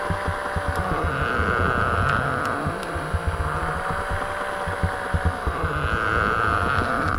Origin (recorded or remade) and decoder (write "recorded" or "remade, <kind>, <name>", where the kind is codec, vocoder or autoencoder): recorded